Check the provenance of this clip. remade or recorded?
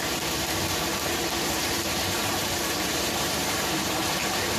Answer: remade